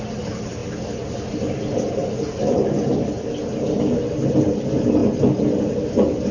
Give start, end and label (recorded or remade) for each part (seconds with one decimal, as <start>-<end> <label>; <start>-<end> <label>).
0.0-6.3 recorded